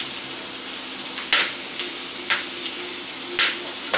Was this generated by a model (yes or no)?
no